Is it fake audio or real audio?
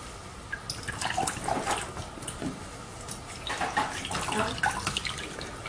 real